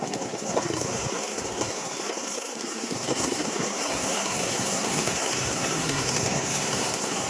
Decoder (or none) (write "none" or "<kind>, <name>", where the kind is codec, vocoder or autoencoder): codec, SNAC